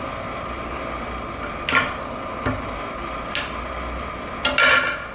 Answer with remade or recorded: recorded